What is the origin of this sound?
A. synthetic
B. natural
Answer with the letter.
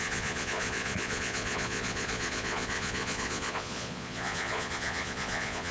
A